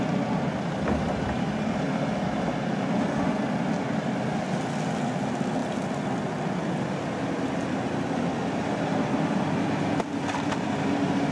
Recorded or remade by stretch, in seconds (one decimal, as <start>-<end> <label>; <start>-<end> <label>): 0.0-11.3 recorded